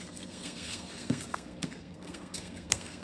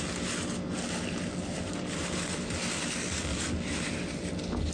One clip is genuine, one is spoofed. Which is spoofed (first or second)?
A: first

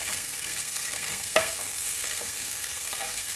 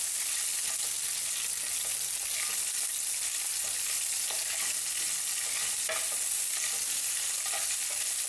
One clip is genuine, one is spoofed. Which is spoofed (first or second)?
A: first